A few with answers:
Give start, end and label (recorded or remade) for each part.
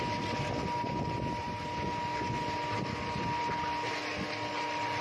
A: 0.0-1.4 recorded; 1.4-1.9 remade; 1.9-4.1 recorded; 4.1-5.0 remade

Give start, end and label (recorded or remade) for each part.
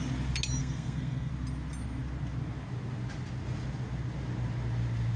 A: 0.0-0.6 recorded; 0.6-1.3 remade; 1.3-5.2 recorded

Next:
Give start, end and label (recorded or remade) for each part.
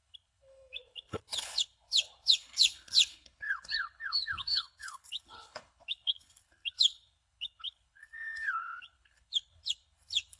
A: 0.0-10.4 remade